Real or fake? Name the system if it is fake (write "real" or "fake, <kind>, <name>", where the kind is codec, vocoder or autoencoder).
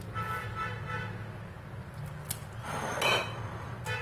real